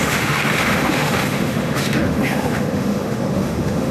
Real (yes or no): no